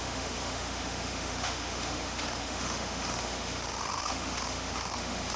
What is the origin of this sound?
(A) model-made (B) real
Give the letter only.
A